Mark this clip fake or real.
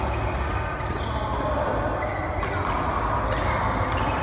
real